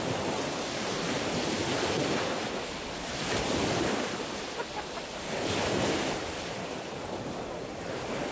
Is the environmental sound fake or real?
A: fake